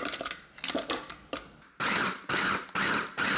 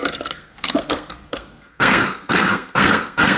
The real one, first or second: first